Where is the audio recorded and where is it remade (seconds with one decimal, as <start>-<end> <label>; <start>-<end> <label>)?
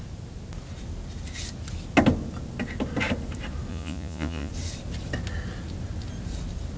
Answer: 0.0-3.7 recorded; 3.7-4.5 remade; 4.5-6.8 recorded